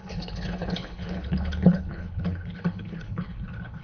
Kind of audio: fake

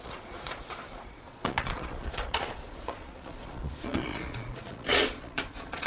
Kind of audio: fake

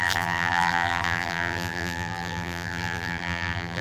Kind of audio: fake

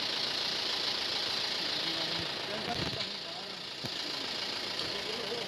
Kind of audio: real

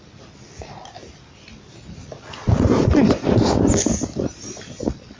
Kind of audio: real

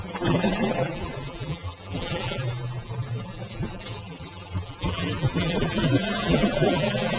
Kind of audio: fake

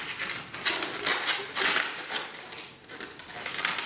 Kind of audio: real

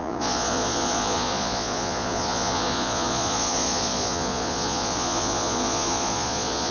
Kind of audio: fake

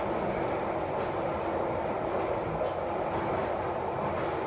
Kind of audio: real